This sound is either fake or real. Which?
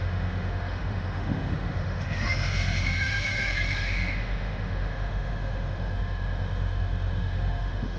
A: fake